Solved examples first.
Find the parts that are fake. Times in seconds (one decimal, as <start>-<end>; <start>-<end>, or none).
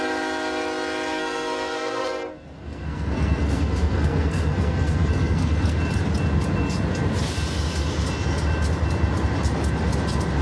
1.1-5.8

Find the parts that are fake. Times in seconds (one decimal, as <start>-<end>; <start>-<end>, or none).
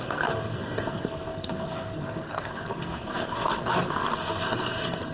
0.0-5.1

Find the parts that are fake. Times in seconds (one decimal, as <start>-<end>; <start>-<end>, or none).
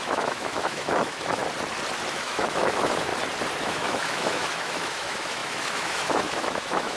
0.0-1.4; 2.1-3.1; 3.6-7.0